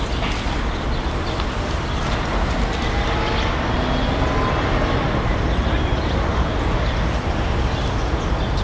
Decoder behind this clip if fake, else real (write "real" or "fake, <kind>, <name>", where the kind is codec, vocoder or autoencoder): real